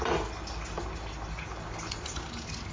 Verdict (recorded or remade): recorded